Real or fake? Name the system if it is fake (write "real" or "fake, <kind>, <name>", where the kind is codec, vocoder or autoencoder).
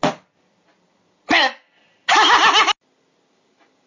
real